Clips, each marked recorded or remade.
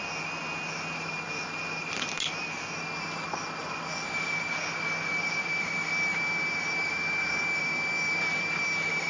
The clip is recorded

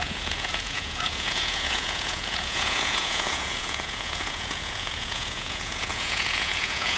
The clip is remade